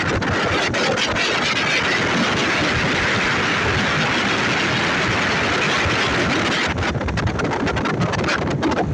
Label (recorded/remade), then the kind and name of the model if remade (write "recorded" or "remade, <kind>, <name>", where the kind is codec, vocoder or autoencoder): recorded